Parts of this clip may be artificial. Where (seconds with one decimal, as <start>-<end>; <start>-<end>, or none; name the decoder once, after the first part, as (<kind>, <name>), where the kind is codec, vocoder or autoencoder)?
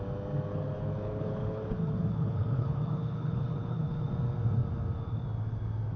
0.5-4.1 (codec, HILCodec)